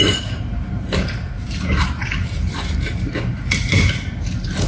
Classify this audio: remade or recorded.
remade